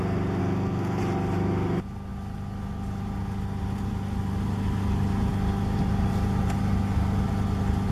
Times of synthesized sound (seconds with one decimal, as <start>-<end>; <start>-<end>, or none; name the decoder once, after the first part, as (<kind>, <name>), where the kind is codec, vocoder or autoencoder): 0.4-1.0 (codec, SNAC)